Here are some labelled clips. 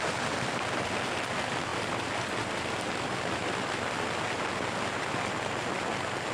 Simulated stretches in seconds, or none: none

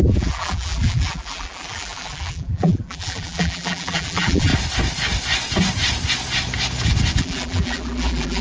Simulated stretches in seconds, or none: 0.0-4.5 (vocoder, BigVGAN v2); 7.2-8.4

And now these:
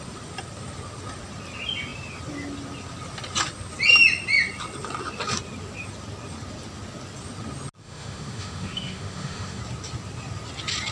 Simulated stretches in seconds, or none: 7.8-9.6 (autoencoder, DAC-VAE)

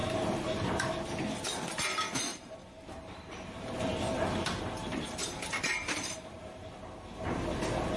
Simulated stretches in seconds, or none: 0.0-1.0 (vocoder, BigVGAN v2); 2.3-6.8